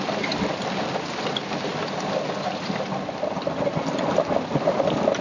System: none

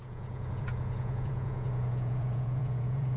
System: vocoder, Vocos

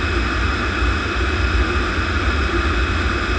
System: none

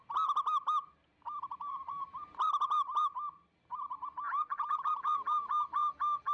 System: none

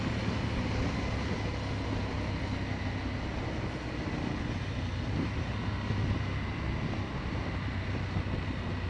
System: none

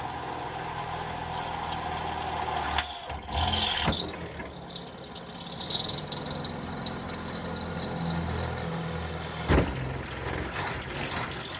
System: none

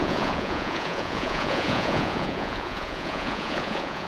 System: vocoder, Vocos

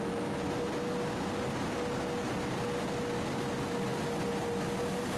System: none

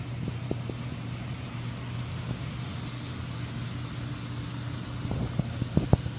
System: none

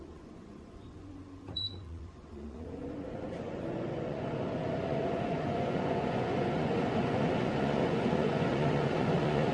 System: vocoder, Vocos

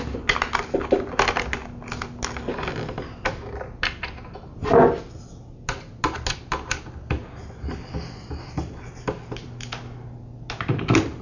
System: none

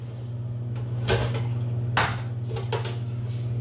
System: none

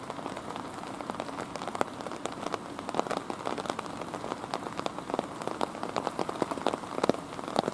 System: none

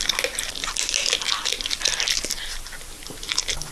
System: none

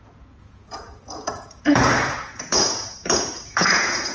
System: vocoder, Vocos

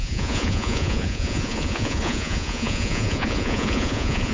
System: vocoder, Vocos